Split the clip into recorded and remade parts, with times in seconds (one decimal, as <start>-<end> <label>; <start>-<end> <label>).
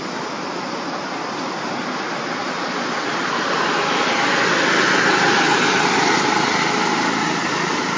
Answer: 0.0-8.0 recorded